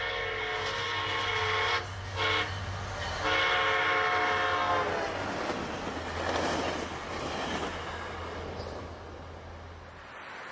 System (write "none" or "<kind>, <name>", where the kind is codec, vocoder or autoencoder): none